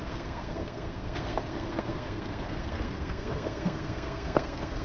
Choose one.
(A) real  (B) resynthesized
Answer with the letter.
B